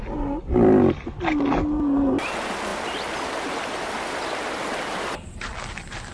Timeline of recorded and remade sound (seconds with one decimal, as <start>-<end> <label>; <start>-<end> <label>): 0.0-6.1 recorded